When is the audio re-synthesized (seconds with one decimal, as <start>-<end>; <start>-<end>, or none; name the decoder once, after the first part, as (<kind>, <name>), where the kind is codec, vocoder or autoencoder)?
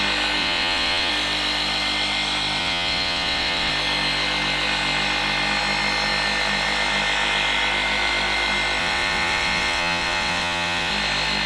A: 0.4-1.1 (vocoder, WaveNeXt); 2.6-3.7; 8.8-10.9